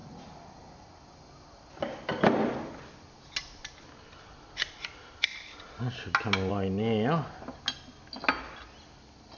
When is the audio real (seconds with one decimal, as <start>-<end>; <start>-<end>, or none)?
0.0-9.4